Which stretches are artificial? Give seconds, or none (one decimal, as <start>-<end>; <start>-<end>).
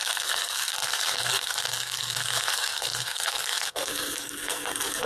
0.0-5.1